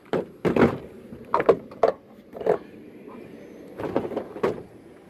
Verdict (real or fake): fake